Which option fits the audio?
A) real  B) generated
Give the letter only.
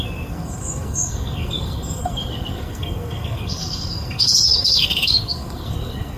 B